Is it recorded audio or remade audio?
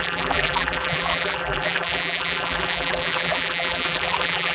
remade